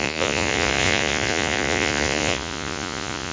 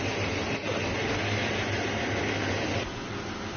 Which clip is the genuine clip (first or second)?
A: second